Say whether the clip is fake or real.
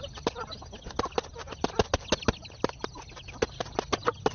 real